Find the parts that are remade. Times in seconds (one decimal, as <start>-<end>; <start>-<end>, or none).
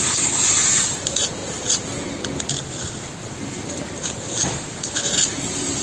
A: none